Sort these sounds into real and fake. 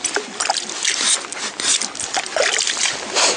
real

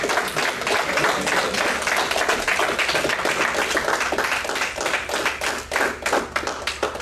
real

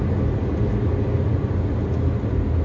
real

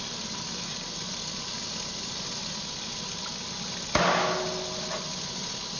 real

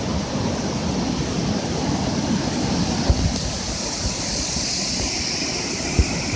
real